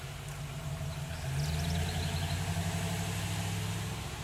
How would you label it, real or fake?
real